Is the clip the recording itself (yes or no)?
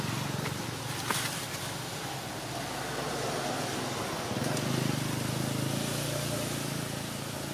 yes